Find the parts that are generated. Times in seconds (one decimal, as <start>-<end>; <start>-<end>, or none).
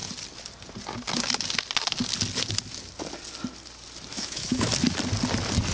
4.1-4.7